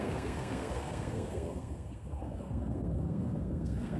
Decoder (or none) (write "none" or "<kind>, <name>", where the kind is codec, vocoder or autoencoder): codec, SNAC